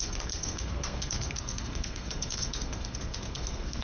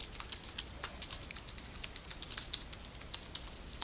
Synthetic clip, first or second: first